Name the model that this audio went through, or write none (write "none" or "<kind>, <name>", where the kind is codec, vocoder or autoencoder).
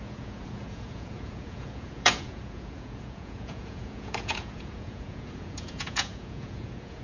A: vocoder, Vocos